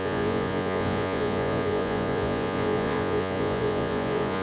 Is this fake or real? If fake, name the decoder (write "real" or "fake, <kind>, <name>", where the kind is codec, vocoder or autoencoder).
fake, vocoder, Vocos